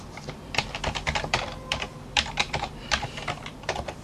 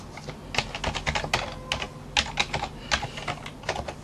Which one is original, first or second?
second